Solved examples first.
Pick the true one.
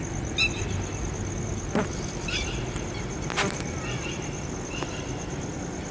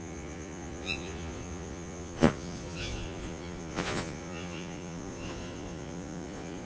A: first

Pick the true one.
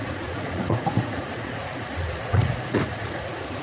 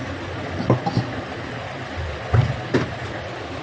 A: second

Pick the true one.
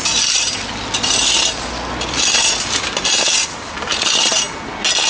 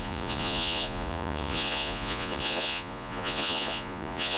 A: first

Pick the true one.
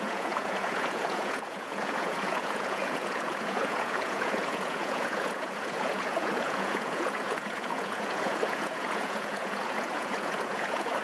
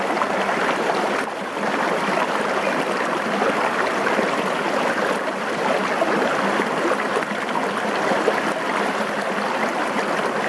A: second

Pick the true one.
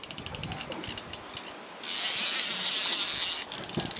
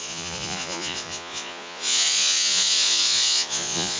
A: first